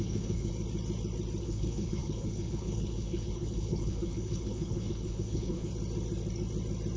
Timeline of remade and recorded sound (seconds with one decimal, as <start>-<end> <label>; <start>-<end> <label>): 0.0-0.5 remade; 0.5-1.4 recorded; 1.4-5.7 remade; 5.7-7.0 recorded

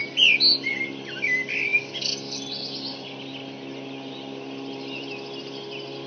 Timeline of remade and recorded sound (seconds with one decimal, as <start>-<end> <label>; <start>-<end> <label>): 0.0-6.1 recorded

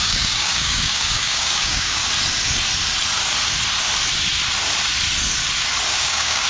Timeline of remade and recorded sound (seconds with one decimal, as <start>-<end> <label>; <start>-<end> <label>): 0.0-2.0 remade; 2.0-5.9 recorded; 5.9-6.5 remade